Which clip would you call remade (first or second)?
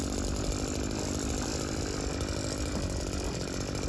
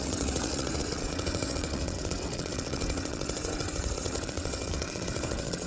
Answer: second